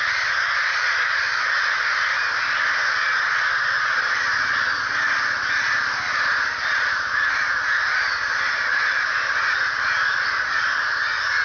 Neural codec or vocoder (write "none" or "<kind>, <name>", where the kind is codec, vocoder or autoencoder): none